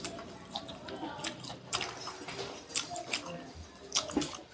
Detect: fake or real fake